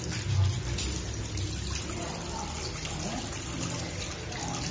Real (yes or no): yes